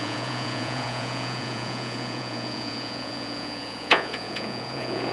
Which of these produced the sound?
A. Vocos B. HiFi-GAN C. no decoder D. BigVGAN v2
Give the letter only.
A